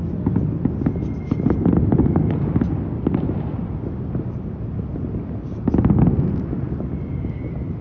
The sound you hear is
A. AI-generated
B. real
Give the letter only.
B